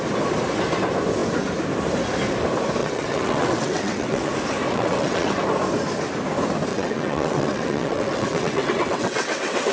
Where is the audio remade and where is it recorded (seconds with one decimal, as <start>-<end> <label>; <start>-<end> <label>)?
0.0-2.8 recorded; 2.8-4.3 remade; 4.3-4.7 recorded; 4.7-5.4 remade; 5.4-6.7 recorded; 6.7-9.7 remade